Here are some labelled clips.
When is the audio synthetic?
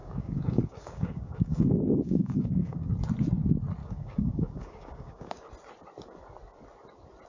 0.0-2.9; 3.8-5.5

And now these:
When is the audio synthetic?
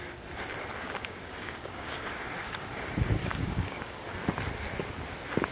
0.8-2.1; 3.2-4.0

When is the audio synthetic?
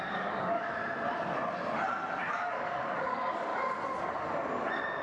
0.0-0.8; 2.3-3.5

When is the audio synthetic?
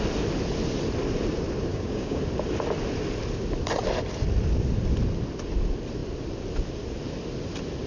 1.7-2.2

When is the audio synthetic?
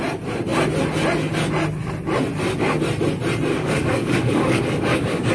3.5-5.3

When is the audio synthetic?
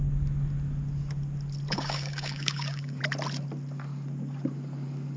1.7-3.0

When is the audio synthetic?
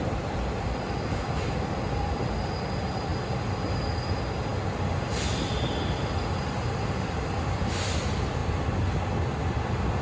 none